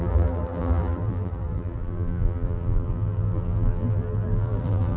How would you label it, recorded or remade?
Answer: remade